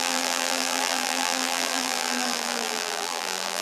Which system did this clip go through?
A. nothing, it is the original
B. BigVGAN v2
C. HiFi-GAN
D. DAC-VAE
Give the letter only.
B